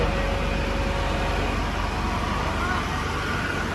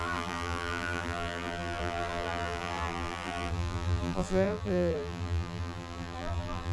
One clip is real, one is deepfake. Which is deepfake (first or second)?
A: second